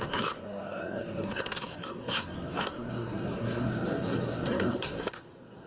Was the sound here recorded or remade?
remade